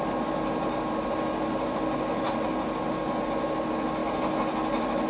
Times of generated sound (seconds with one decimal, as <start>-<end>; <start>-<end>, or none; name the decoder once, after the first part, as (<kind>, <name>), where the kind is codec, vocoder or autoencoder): none